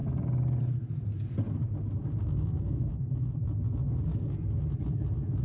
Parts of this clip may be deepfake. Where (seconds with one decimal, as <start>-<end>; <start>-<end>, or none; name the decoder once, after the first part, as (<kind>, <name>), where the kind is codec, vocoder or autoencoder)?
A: 1.6-2.9 (codec, DAC); 4.1-4.6